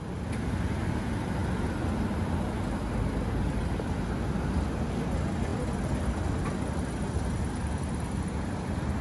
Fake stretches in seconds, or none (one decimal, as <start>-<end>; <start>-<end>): none